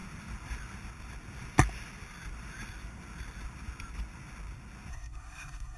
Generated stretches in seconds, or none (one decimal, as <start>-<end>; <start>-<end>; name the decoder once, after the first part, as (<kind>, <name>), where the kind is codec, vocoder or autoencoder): 4.9-5.8 (codec, SNAC)